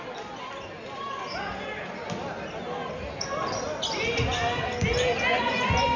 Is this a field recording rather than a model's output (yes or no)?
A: yes